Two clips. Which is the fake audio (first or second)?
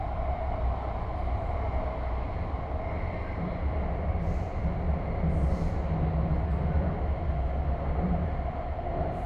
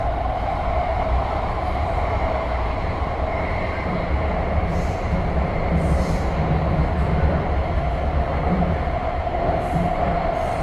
second